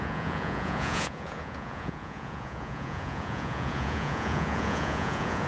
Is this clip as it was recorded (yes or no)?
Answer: no